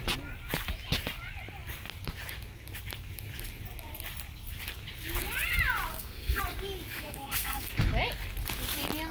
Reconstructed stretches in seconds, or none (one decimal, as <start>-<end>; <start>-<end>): 5.9-6.4; 6.9-7.7